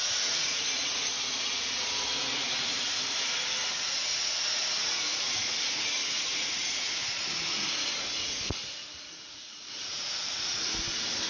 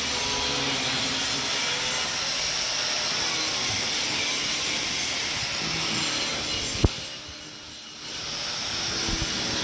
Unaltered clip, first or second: second